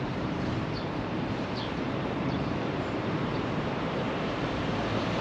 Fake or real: fake